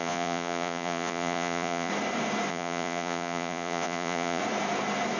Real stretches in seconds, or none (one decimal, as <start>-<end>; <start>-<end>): 1.9-2.5; 4.4-5.2